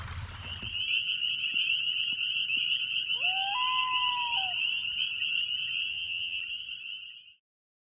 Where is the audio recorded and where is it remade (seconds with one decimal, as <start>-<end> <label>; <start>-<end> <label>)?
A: 0.0-5.9 recorded; 5.9-6.4 remade; 6.4-7.8 recorded